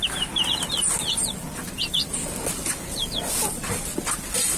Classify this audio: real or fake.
real